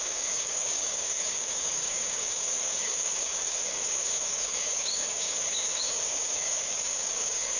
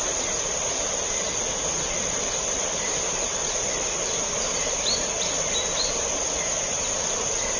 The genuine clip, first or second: second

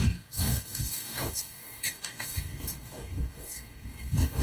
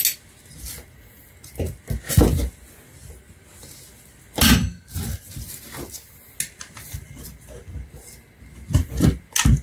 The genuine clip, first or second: second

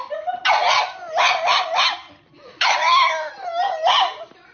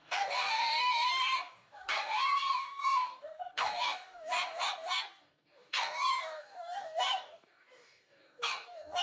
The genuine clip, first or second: first